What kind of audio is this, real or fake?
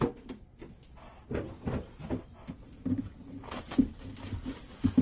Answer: real